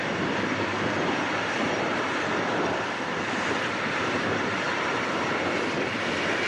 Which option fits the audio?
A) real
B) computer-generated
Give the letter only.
B